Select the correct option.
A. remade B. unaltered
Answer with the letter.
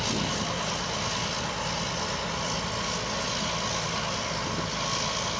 B